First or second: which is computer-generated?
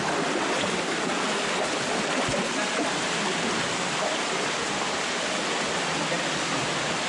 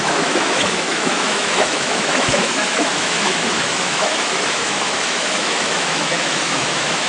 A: second